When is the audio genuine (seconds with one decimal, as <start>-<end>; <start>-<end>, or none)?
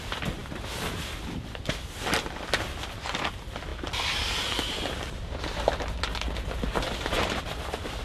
0.0-8.0